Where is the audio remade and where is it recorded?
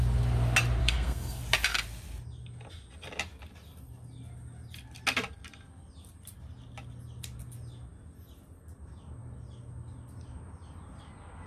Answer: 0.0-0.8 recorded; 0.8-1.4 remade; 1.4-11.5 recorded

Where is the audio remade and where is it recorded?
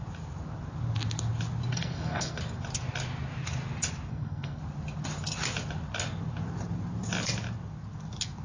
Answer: 0.0-1.7 recorded; 1.7-2.4 remade; 2.4-4.1 recorded; 4.1-4.6 remade; 4.6-8.4 recorded